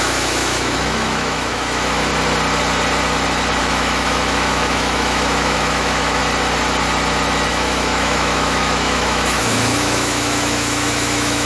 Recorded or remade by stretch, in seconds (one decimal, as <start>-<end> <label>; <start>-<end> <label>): 0.0-2.1 remade; 2.1-3.6 recorded; 3.6-6.2 remade; 6.2-7.5 recorded; 7.5-11.5 remade